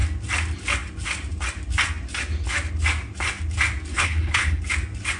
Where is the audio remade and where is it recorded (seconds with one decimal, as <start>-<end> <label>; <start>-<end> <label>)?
0.0-3.9 recorded; 3.9-4.6 remade; 4.6-5.2 recorded